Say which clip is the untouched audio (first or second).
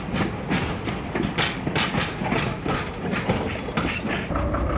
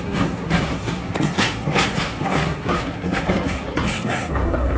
first